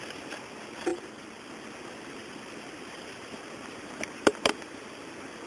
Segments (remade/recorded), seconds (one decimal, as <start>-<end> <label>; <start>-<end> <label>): 0.0-0.9 recorded; 0.9-1.5 remade; 1.5-2.2 recorded; 2.2-4.8 remade; 4.8-5.5 recorded